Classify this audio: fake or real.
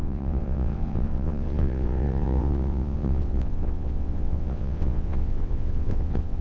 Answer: fake